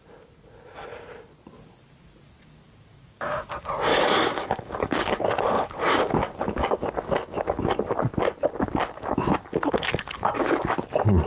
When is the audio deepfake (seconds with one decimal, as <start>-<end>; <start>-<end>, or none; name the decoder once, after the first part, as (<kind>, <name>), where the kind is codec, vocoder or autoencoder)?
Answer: 2.9-3.5 (codec, DAC); 3.9-7.6